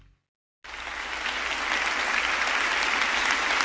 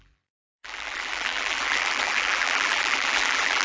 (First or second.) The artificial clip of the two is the second